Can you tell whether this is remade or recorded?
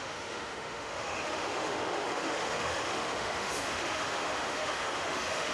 remade